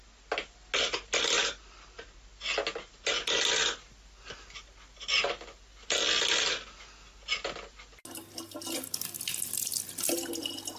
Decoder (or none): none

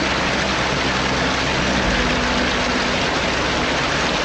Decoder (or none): none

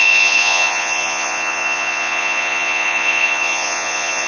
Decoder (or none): vocoder, Vocos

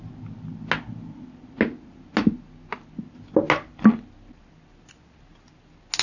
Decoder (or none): none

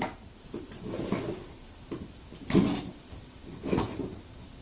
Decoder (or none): none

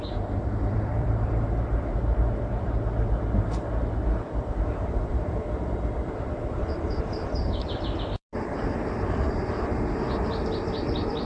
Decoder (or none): vocoder, BigVGAN v2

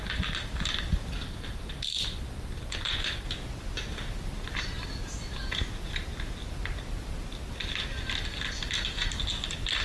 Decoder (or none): none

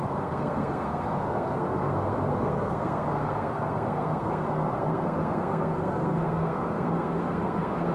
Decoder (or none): codec, SNAC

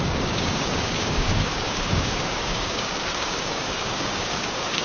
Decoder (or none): codec, DAC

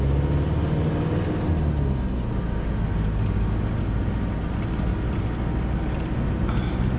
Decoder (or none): none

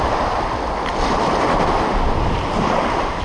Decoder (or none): none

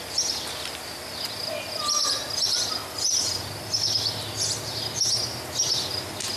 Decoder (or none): none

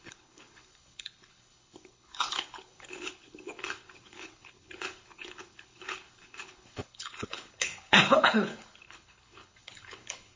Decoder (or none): codec, HILCodec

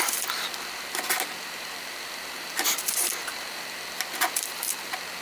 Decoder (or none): none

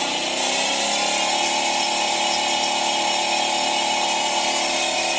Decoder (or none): none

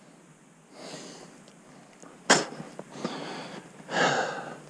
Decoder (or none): none